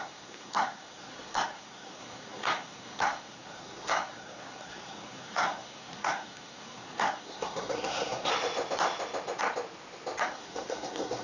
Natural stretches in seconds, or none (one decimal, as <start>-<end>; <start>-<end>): 8.3-10.2